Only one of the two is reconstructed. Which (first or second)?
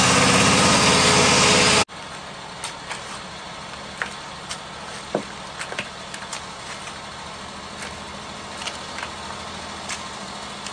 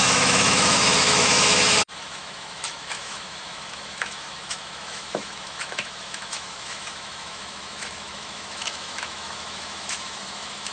second